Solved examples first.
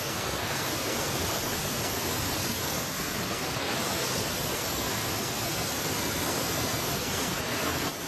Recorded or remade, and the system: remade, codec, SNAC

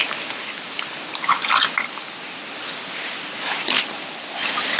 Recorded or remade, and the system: recorded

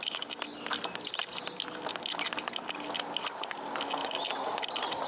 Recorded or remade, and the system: recorded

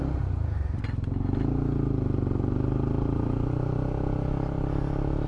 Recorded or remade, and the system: recorded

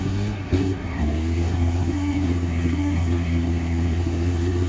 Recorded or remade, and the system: remade, codec, SNAC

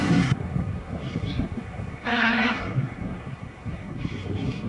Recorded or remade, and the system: remade, codec, SNAC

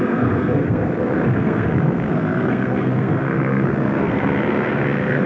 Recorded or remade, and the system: remade, codec, SNAC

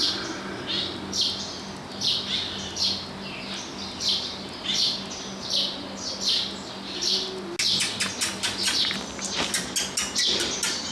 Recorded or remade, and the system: recorded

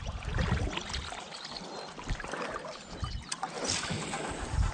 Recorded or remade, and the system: recorded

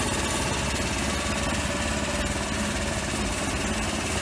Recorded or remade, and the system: recorded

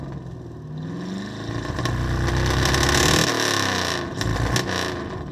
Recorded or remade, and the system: recorded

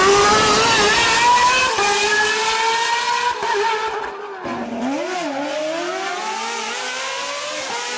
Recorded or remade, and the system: recorded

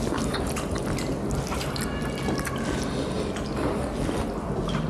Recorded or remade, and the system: recorded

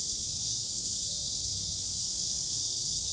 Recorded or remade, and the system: remade, codec, SNAC